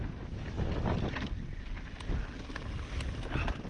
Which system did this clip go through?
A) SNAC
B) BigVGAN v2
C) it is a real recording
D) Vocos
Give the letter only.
C